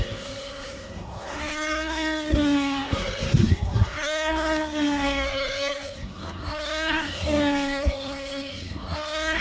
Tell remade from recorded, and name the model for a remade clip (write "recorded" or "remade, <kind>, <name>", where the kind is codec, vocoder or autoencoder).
remade, codec, SNAC